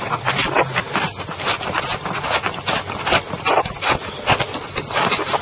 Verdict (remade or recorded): recorded